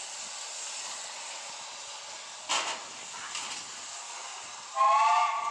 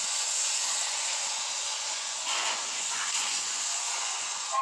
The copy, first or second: second